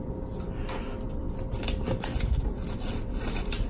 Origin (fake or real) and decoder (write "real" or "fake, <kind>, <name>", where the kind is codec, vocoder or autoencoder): real